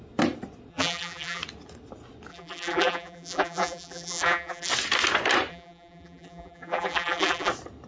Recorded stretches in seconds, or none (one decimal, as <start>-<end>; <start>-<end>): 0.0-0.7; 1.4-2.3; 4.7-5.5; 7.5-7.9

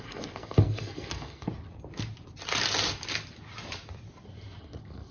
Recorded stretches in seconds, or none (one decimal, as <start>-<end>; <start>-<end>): 1.5-4.6

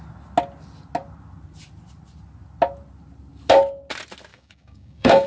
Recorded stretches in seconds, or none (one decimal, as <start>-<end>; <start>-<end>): 0.0-4.3